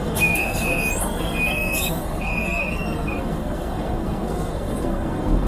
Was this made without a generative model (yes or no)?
no